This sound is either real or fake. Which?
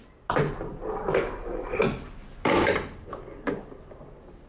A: real